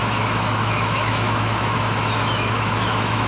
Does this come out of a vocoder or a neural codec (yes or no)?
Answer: yes